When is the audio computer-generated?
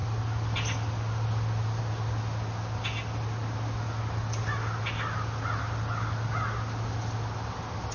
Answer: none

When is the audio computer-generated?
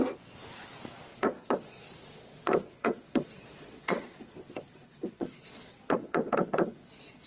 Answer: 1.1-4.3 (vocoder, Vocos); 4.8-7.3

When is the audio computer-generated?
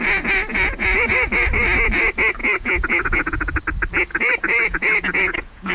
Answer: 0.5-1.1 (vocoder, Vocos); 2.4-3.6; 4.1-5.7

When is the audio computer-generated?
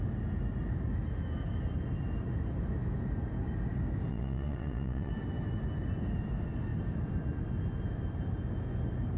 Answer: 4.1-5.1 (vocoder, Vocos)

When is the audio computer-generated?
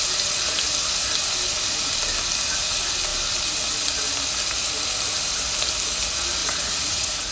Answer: 6.4-7.3 (vocoder, Vocos)